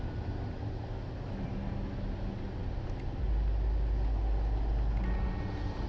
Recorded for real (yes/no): yes